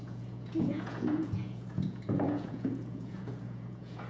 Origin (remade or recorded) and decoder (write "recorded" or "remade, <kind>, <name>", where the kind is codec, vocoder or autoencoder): remade, vocoder, Vocos